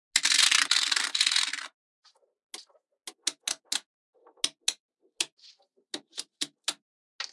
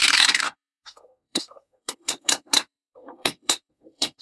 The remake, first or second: second